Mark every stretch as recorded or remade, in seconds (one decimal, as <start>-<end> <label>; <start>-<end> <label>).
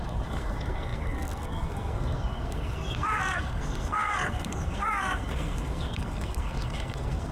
0.0-7.3 remade